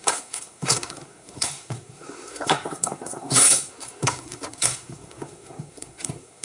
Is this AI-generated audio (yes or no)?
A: yes